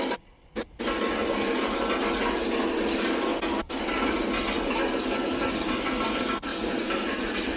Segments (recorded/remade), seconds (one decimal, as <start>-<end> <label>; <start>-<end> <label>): 0.0-6.5 recorded; 6.5-7.1 remade; 7.1-7.6 recorded